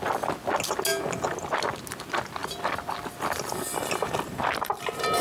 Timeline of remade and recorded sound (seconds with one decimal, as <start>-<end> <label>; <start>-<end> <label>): 0.0-3.7 recorded; 3.7-4.8 remade; 4.8-5.2 recorded